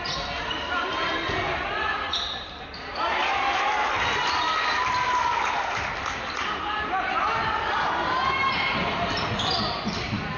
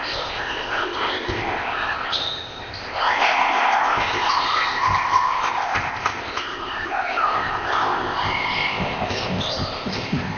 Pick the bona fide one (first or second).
first